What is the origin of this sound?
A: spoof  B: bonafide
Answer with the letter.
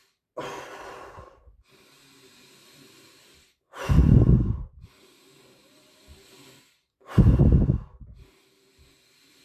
B